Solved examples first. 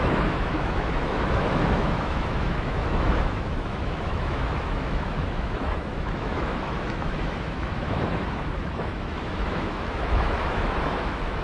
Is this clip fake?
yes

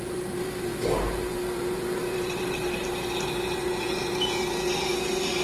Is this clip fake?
yes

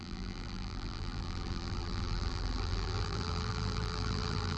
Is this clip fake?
yes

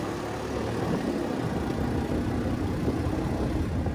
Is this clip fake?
no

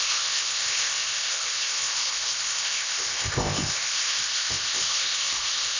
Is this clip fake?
yes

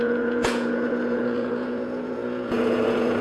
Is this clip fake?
yes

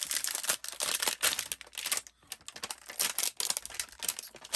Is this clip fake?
no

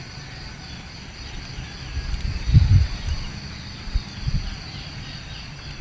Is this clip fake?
no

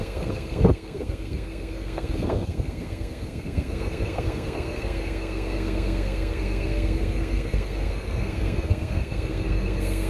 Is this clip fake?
yes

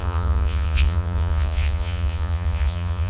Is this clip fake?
yes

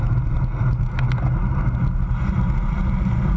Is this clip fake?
no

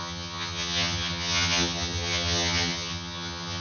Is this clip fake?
yes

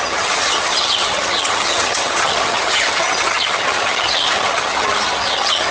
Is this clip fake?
yes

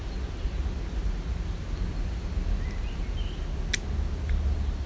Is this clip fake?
no